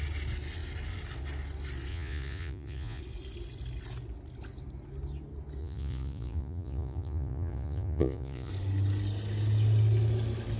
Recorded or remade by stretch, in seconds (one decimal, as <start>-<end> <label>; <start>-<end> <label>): 0.0-1.9 recorded; 1.9-3.0 remade; 3.0-5.6 recorded; 5.6-8.5 remade; 8.5-10.6 recorded

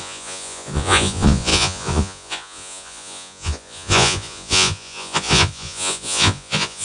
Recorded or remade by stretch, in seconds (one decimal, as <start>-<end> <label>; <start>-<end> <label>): 0.0-6.8 remade